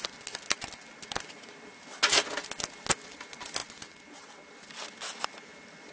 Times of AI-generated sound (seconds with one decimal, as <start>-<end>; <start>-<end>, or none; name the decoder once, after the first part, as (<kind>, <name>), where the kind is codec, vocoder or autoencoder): none